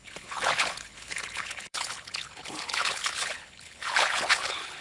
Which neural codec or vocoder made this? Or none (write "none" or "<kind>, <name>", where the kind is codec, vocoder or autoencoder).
codec, HILCodec